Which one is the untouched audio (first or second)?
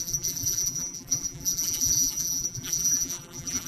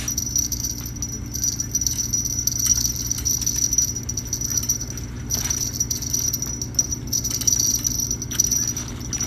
second